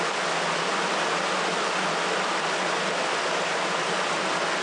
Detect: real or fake real